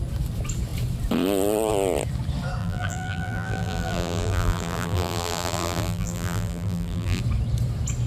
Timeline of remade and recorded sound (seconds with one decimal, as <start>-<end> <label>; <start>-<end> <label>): 0.0-2.6 recorded; 2.6-7.2 remade; 7.2-8.1 recorded